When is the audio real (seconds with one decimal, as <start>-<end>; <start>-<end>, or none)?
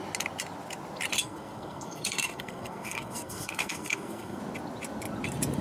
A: 0.0-1.2; 4.4-5.6